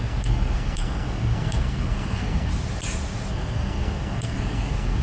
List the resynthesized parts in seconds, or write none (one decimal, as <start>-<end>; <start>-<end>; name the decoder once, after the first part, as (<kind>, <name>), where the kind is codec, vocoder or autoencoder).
0.0-2.5 (codec, SNAC); 3.3-5.0